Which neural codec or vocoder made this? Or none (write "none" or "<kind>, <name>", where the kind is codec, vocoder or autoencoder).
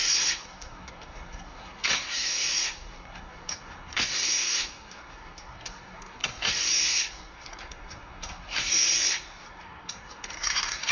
codec, SNAC